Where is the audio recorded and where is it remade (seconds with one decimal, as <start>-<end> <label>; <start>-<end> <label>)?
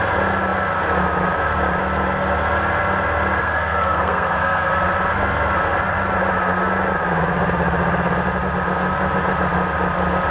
0.0-3.4 recorded; 3.4-4.7 remade; 4.7-10.3 recorded